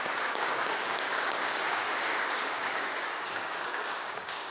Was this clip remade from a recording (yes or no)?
yes